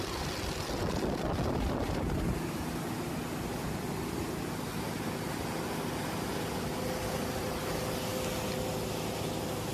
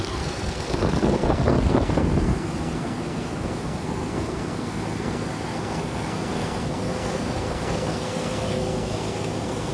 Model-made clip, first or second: second